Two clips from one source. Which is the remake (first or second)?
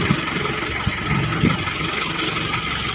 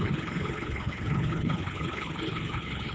second